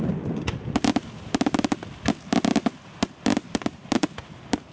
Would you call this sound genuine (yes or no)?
yes